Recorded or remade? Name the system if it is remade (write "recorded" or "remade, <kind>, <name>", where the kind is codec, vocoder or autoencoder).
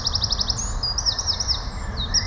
recorded